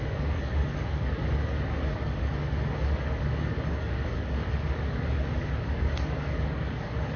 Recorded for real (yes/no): no